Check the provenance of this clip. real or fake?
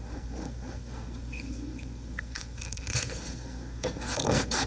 fake